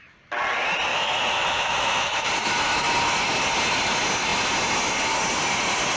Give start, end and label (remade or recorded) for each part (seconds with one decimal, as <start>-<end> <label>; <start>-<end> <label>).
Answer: 0.0-0.9 recorded; 0.9-2.3 remade; 2.3-6.0 recorded